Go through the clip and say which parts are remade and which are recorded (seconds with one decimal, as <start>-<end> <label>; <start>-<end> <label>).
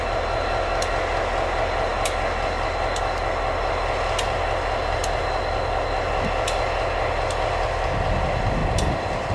0.0-9.3 recorded